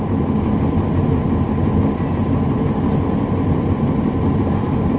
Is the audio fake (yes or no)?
no